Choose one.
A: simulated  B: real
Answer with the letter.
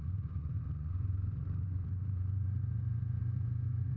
A